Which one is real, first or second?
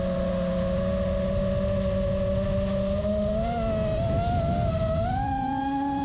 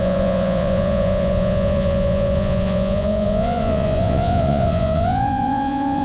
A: first